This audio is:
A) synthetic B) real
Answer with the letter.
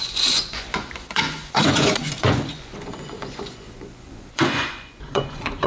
A